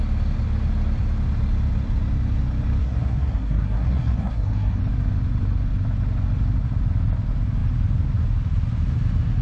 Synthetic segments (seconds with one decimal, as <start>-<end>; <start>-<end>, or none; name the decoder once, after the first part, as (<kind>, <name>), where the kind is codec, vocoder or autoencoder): 2.8-4.8 (codec, SNAC)